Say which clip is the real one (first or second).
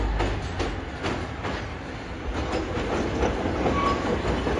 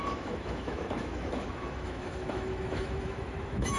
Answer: first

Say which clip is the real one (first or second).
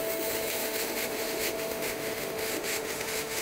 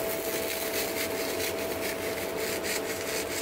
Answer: second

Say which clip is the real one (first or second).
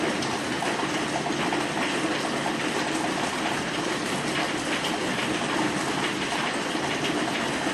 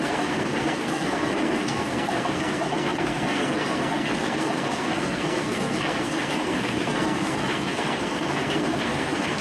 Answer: first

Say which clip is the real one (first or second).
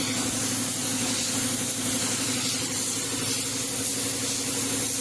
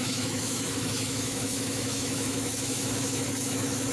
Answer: first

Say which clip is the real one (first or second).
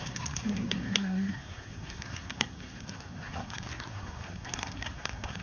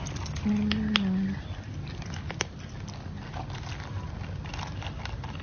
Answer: second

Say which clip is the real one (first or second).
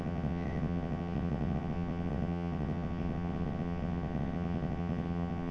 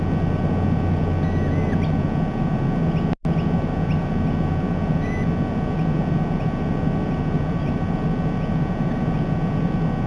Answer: second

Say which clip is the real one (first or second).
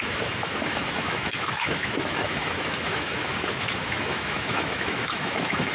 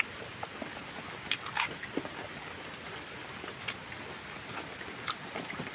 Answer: second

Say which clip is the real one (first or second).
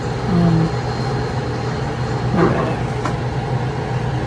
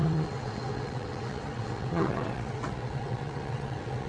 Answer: first